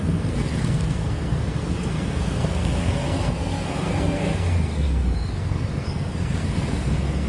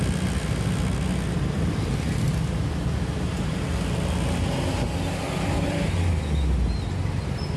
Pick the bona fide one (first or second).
second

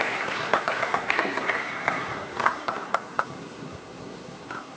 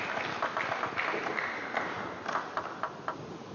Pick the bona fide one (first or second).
second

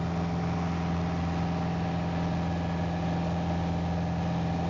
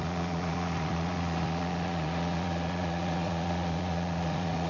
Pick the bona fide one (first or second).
first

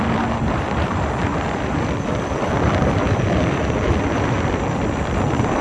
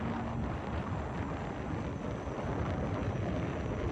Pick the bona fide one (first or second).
second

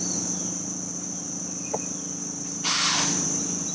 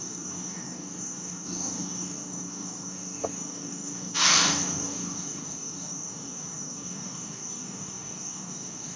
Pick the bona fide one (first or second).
first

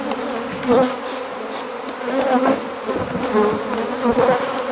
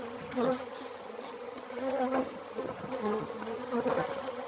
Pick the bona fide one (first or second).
first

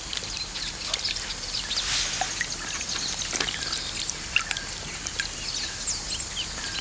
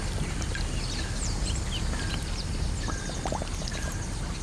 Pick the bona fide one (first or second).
first